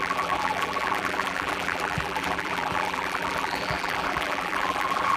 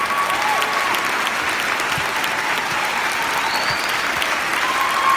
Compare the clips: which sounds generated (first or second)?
first